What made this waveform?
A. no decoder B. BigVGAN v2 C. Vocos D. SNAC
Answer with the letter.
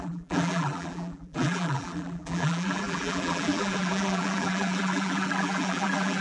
B